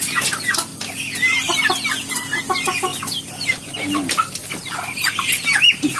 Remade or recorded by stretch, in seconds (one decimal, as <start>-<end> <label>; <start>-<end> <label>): 0.0-6.0 recorded